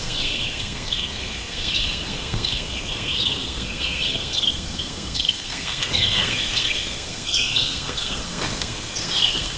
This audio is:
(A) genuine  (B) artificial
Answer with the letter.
B